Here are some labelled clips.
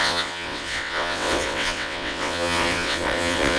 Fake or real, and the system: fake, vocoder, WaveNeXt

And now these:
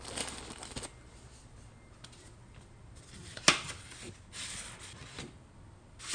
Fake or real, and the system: real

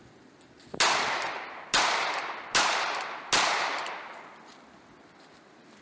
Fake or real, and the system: real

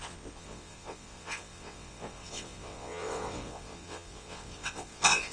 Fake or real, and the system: fake, vocoder, WaveNeXt